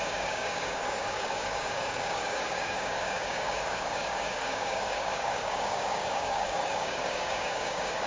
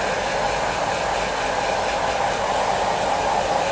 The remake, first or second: first